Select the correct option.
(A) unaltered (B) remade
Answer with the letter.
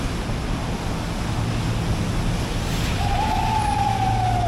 A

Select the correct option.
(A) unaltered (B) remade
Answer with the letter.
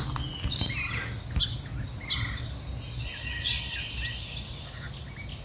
A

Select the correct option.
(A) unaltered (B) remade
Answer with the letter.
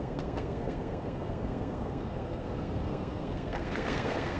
B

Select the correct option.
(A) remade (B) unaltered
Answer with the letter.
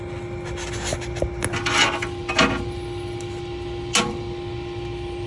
B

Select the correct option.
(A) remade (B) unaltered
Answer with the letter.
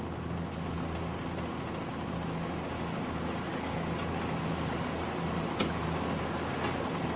B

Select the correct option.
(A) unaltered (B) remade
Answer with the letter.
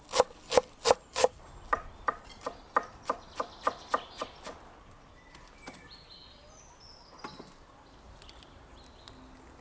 A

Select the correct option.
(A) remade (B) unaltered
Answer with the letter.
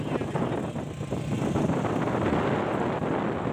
B